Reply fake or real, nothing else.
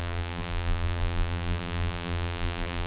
fake